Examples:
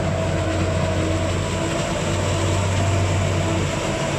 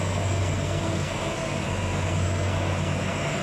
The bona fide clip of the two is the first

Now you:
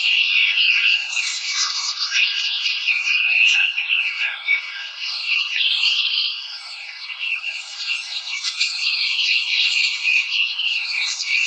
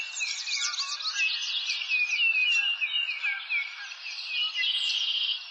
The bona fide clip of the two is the second